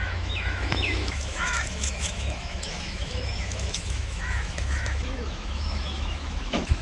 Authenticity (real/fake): fake